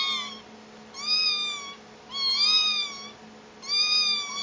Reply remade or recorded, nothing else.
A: recorded